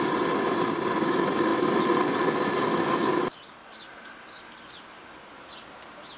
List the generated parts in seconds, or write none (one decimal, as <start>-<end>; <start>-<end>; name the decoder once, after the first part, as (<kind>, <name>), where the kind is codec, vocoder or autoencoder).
none